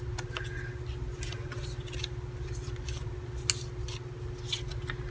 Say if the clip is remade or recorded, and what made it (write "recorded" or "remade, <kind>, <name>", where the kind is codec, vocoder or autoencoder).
recorded